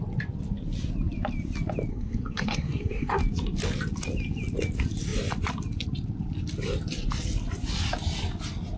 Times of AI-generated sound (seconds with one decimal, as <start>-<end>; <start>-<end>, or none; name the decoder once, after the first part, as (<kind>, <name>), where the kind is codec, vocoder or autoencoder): 1.9-3.2 (codec, SNAC)